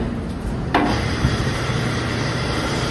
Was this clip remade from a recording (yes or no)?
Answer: yes